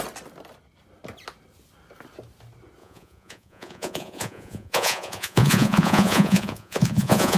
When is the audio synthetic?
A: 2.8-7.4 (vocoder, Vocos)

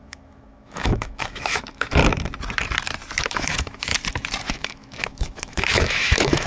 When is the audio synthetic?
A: 0.0-2.0 (autoencoder, DAC-VAE); 3.2-3.9; 4.5-6.5

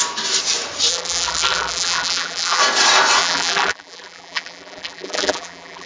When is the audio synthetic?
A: 0.9-2.6 (vocoder, BigVGAN v2); 3.2-5.9

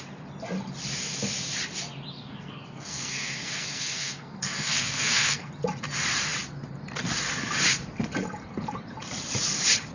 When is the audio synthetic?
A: 2.1-5.5 (codec, SNAC)